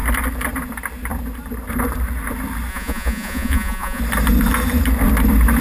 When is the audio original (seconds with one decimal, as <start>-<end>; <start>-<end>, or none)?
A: 0.0-2.7; 4.0-5.6